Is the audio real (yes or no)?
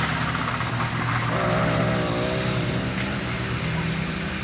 yes